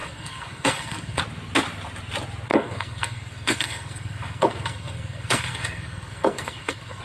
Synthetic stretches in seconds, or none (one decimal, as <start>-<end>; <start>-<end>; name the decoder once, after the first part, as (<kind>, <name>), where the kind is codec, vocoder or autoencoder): 0.0-1.2 (codec, SNAC); 2.5-7.0